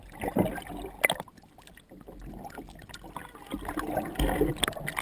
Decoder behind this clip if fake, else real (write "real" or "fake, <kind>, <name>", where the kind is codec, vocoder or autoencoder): real